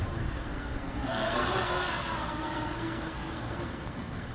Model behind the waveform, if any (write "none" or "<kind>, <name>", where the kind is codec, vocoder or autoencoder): codec, SNAC